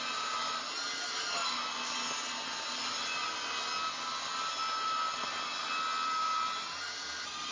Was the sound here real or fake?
real